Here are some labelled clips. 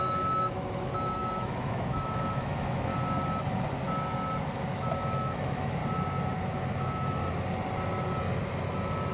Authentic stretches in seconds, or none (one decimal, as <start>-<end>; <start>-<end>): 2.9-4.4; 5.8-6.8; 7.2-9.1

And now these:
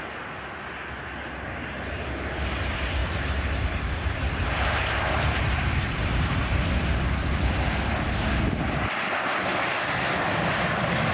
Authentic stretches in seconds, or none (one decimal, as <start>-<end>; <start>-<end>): 0.0-3.0; 6.5-11.1

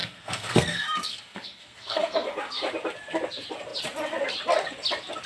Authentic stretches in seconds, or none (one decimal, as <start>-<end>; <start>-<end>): 2.6-5.3